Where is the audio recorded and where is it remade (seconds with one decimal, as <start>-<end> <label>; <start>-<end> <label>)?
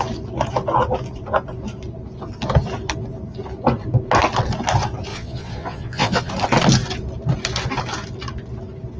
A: 0.0-5.1 recorded; 5.1-6.3 remade; 6.3-9.0 recorded